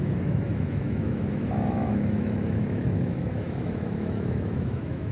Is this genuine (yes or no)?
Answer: no